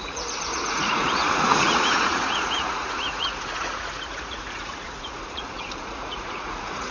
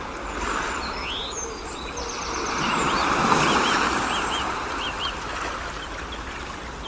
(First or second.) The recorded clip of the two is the second